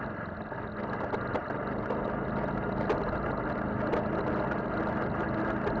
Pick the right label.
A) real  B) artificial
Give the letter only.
A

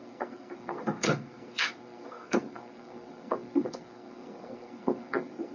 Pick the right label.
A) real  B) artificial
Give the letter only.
B